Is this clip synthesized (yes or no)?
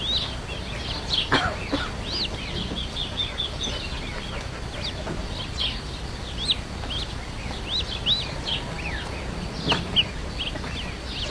no